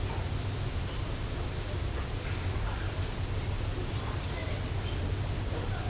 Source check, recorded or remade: recorded